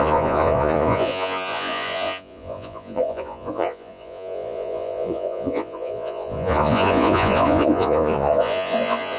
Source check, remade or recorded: remade